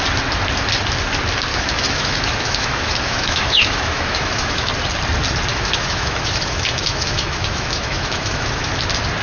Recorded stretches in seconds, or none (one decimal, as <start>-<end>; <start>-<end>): 0.0-1.5; 4.7-5.5; 8.7-9.2